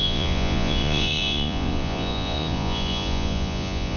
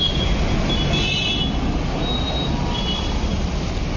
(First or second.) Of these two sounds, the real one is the second